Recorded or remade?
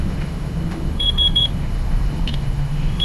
remade